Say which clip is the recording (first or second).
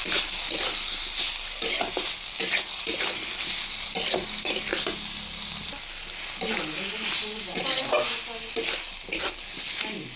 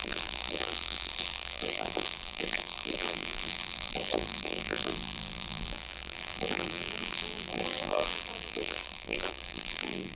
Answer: first